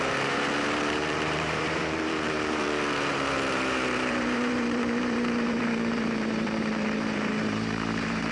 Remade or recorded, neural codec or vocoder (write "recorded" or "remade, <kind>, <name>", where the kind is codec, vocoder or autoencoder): remade, vocoder, BigVGAN v2